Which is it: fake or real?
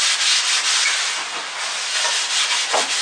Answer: real